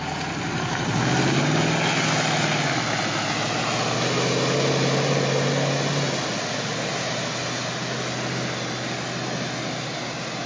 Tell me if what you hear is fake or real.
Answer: real